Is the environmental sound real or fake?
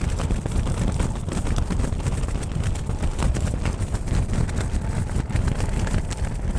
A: real